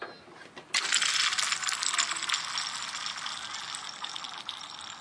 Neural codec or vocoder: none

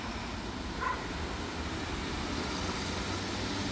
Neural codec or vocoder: none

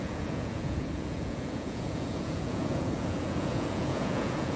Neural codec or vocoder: vocoder, Vocos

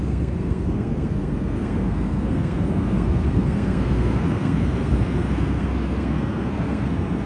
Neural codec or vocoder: codec, SNAC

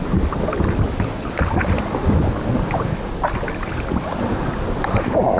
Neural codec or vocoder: none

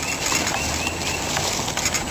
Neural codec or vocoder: none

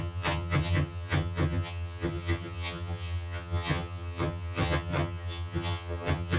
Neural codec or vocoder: vocoder, HiFi-GAN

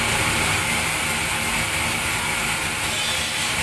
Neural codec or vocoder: none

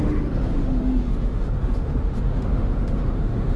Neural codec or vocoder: autoencoder, DAC-VAE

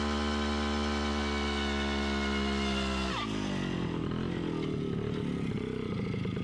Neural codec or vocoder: none